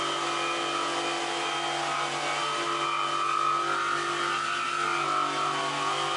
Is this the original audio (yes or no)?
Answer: yes